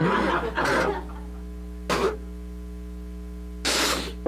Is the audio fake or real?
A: real